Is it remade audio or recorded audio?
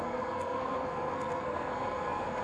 remade